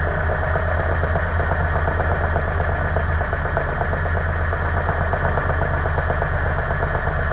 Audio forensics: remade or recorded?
recorded